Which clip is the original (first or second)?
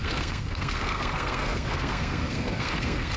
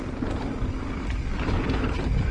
second